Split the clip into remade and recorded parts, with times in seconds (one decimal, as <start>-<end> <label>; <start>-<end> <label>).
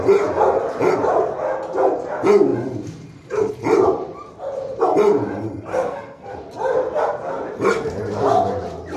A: 0.0-5.7 recorded; 5.7-6.3 remade; 6.3-9.0 recorded